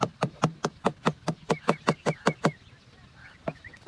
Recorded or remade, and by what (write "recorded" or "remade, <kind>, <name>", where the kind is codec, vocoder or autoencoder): recorded